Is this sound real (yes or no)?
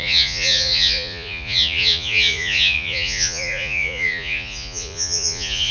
no